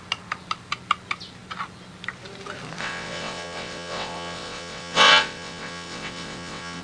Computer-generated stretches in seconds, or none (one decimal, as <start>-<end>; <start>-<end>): 2.8-6.8